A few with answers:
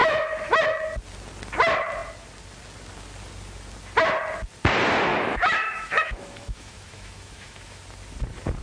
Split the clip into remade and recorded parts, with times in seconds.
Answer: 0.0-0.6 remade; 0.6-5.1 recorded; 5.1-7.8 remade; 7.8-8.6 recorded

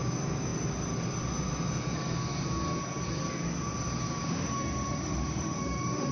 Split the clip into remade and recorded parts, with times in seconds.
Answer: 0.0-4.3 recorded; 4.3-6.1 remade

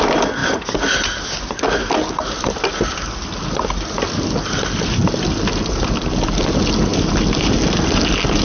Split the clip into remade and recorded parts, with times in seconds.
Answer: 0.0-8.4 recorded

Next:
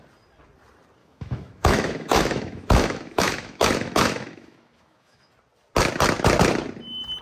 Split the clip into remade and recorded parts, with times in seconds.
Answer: 0.0-1.0 recorded; 1.0-5.3 remade; 5.3-7.2 recorded

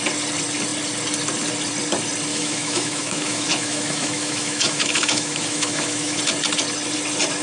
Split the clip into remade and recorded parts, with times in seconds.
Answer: 0.0-2.3 recorded; 2.3-6.2 remade; 6.2-7.4 recorded